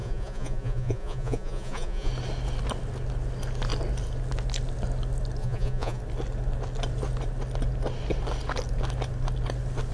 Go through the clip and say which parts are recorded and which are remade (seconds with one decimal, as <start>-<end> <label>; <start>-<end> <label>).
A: 0.0-2.1 remade; 2.1-5.4 recorded; 5.4-6.0 remade; 6.0-9.9 recorded